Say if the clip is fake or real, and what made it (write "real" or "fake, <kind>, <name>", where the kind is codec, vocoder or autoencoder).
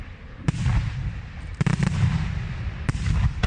real